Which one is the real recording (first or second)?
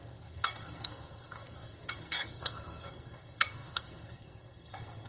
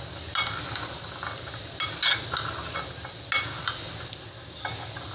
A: second